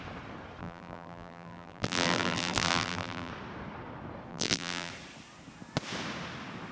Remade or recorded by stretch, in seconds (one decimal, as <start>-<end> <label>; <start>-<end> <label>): 0.0-0.6 recorded; 0.6-3.3 remade; 3.3-4.3 recorded; 4.3-4.9 remade; 4.9-6.7 recorded